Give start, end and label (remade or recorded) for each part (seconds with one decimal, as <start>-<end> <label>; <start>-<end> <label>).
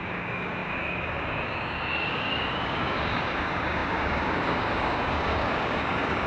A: 0.0-6.3 remade